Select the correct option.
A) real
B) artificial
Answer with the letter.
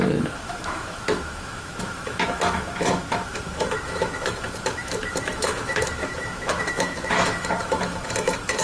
B